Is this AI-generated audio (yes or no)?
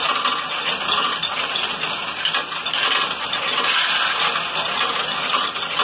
no